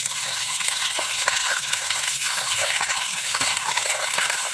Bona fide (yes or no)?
no